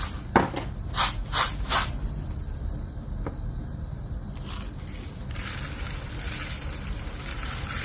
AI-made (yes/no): no